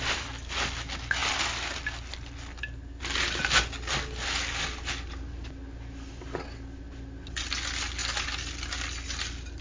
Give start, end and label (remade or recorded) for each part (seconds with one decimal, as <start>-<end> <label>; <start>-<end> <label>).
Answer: 0.0-9.6 recorded